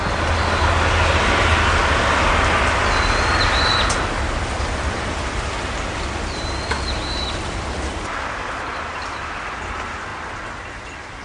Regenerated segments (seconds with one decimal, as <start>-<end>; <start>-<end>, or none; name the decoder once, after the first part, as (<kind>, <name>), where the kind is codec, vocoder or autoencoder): none